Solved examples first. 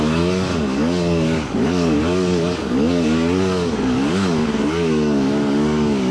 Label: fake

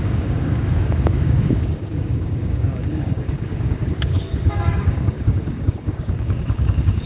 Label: fake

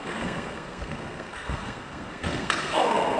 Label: fake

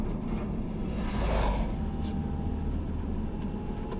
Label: real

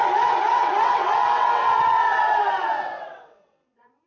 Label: fake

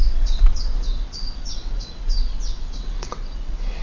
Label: fake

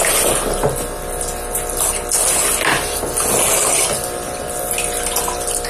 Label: real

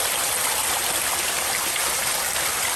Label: real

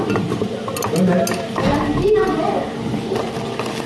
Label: real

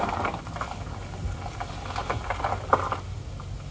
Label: real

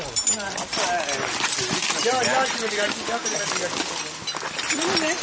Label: real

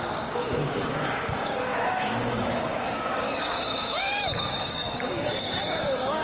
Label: fake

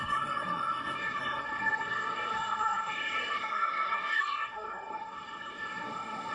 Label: fake